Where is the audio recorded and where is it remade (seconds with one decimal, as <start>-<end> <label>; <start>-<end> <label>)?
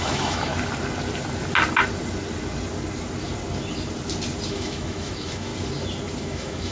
0.0-0.5 remade; 0.5-4.5 recorded; 4.5-5.5 remade; 5.5-6.2 recorded; 6.2-6.7 remade